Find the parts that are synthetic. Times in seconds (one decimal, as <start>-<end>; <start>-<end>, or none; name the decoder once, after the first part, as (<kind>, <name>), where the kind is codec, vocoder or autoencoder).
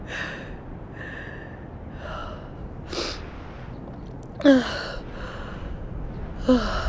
none